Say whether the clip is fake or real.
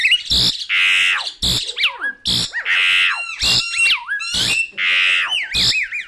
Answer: real